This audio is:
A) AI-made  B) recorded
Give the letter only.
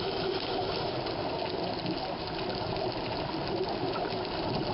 B